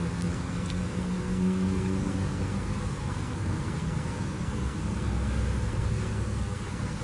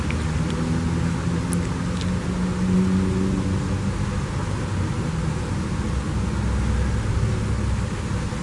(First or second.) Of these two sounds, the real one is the second